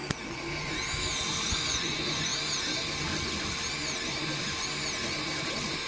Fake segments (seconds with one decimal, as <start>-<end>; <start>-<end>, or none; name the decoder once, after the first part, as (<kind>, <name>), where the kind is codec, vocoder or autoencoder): 1.5-2.3 (vocoder, Vocos)